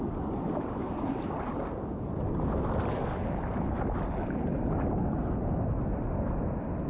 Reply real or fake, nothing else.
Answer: real